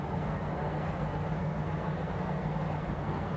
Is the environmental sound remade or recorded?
remade